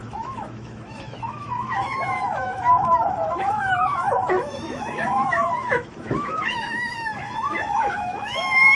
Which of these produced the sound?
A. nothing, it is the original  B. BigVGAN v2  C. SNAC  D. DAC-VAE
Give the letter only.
D